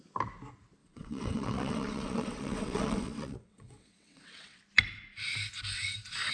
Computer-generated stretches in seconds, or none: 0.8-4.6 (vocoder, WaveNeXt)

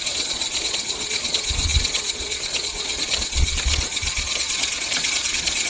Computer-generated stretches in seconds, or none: 0.0-5.7 (vocoder, Vocos)